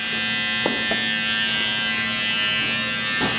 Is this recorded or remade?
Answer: recorded